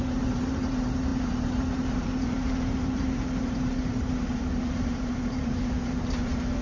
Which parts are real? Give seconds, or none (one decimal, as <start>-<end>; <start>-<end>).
none